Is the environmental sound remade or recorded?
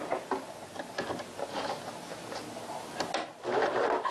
recorded